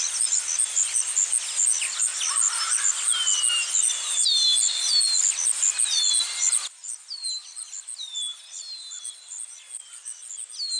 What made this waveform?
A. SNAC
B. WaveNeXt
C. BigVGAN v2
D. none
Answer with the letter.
D